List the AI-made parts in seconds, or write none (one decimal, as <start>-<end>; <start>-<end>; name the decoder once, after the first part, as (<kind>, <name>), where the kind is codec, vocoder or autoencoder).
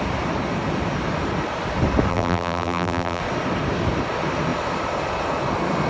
2.1-3.2 (vocoder, BigVGAN v2)